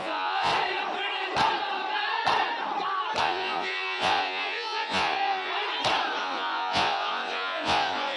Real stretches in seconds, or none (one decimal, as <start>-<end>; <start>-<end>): 0.5-3.2; 5.5-6.2